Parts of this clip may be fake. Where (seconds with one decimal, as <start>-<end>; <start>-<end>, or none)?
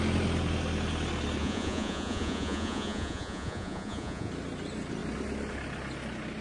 1.4-4.3